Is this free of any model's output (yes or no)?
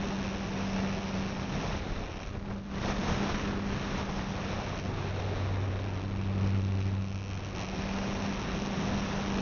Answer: yes